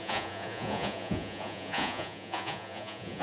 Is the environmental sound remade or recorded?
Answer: remade